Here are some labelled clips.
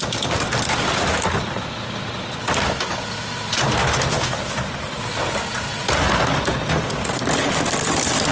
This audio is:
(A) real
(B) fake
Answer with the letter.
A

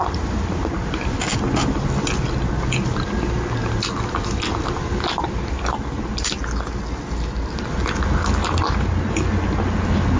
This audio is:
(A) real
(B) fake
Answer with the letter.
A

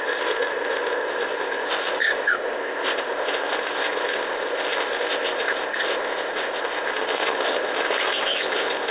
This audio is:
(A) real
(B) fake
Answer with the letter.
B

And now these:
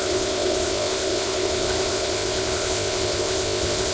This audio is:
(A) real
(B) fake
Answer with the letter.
B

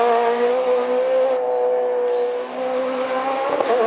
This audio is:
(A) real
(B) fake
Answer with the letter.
A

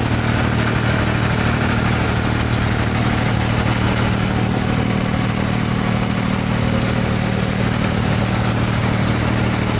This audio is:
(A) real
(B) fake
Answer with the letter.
A